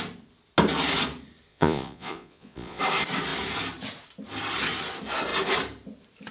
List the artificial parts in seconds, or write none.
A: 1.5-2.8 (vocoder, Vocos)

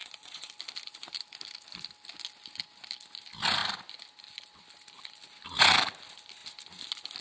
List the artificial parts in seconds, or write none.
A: 0.0-0.5 (vocoder, Vocos)

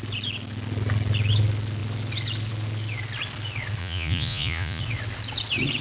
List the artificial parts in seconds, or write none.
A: 3.8-4.8 (vocoder, Vocos)

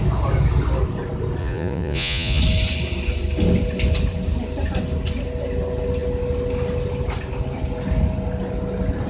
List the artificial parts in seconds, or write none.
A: 1.4-2.4 (vocoder, Vocos)

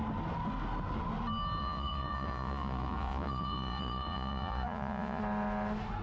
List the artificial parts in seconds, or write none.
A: 1.6-5.2 (vocoder, Vocos)